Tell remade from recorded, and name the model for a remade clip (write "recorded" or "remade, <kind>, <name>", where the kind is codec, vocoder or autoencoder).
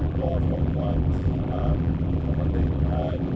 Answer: remade, vocoder, BigVGAN v2